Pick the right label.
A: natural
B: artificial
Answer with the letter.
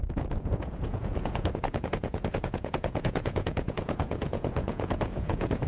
B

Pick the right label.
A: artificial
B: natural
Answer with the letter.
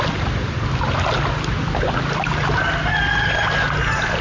B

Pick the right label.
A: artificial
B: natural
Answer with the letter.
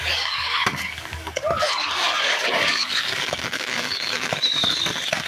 A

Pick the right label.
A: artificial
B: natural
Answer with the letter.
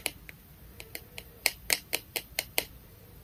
A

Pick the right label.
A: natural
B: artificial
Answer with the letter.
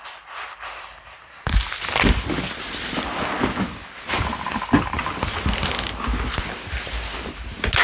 A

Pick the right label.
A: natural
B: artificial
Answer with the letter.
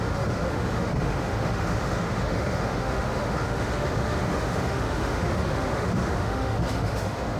B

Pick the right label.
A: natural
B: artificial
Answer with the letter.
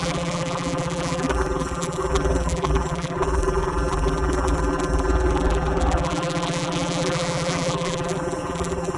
B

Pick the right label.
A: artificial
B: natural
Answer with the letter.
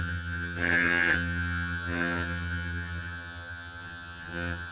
A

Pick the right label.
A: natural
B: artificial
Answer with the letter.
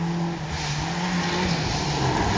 A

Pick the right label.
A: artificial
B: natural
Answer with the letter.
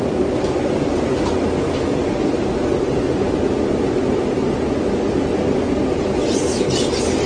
B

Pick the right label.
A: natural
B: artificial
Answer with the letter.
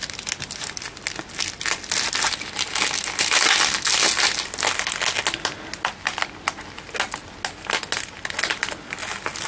A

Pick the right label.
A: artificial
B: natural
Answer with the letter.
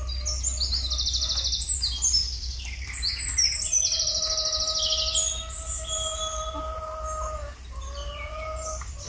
B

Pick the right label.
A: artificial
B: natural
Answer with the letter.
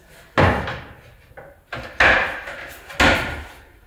B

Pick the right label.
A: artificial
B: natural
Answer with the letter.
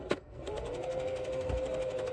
A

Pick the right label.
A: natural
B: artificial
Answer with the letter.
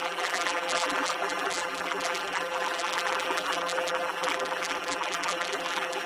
B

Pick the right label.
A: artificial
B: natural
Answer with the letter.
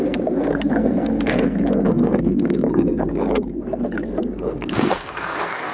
A